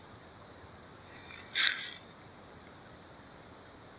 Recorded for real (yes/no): yes